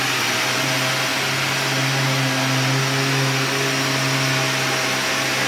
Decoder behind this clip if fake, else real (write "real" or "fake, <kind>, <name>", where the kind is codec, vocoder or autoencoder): real